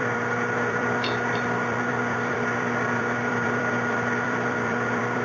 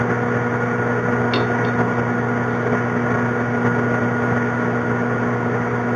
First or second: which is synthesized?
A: first